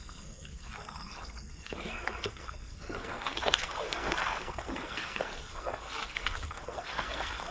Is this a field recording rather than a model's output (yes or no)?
no